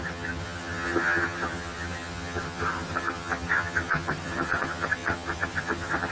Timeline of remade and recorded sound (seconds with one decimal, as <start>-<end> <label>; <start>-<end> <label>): 0.0-6.1 remade